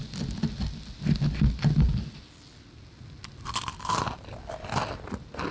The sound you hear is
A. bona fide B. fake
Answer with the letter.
A